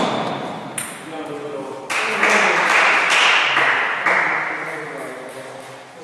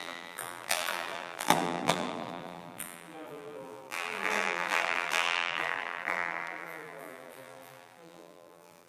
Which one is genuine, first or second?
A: first